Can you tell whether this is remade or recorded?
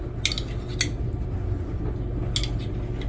recorded